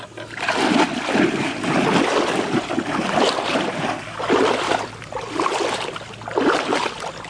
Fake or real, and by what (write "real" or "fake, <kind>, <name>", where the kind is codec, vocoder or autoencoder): real